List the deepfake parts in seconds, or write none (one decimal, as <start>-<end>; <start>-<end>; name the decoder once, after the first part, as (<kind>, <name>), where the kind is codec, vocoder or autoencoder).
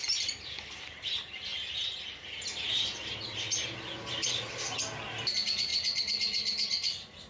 none